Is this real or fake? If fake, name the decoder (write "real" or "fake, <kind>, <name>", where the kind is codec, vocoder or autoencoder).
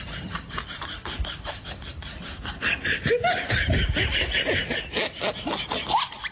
fake, vocoder, BigVGAN v2